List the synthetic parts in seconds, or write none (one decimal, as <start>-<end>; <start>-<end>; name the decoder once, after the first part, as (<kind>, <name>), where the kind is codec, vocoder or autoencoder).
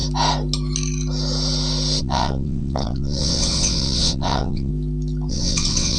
2.0-4.7 (vocoder, WaveNeXt); 5.3-6.0